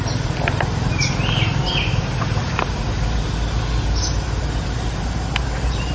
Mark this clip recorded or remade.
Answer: recorded